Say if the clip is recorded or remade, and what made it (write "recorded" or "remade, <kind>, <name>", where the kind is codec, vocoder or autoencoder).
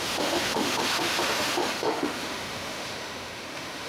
remade, autoencoder, DAC-VAE